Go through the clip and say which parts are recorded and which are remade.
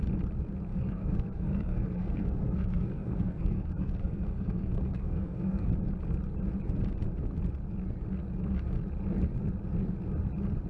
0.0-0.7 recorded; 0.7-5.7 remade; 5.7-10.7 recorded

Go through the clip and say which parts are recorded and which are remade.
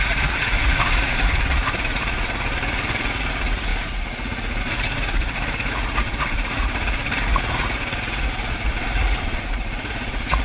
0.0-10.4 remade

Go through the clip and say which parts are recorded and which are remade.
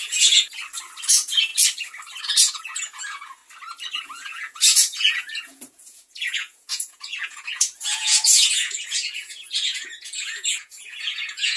0.0-0.6 remade; 0.6-1.1 recorded; 1.1-1.5 remade; 1.5-2.2 recorded; 2.2-3.4 remade; 3.4-4.0 recorded; 4.0-11.6 remade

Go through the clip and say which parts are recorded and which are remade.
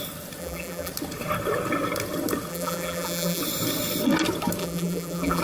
0.0-0.4 recorded; 0.4-0.9 remade; 0.9-2.5 recorded; 2.5-3.4 remade; 3.4-4.6 recorded; 4.6-5.4 remade